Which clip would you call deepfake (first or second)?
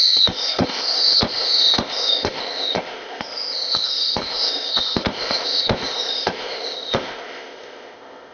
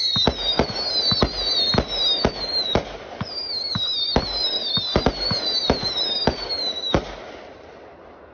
first